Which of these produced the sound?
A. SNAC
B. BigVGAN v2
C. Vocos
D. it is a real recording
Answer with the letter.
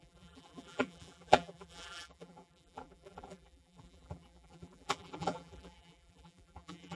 B